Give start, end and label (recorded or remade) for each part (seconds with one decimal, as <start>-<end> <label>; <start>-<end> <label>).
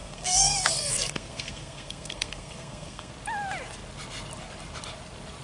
0.0-3.1 remade; 3.1-5.4 recorded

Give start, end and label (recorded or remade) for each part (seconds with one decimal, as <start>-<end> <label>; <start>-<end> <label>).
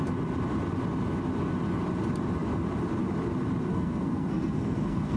0.0-3.7 recorded; 3.7-5.2 remade